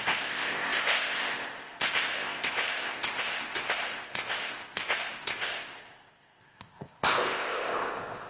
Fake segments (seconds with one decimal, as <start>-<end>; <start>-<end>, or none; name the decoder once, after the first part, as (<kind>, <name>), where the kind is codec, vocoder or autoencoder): 0.0-8.3 (codec, ZipCodec)